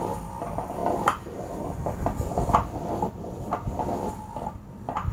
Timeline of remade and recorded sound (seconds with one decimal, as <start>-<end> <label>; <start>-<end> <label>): 0.0-5.1 recorded